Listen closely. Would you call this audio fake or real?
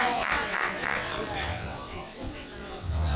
fake